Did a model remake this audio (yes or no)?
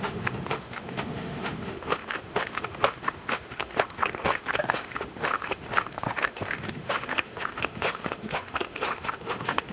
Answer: yes